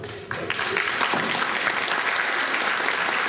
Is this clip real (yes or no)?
yes